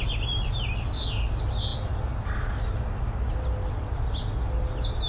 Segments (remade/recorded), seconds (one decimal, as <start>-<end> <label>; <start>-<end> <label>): 0.0-5.1 recorded